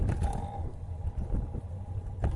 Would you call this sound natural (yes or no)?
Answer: yes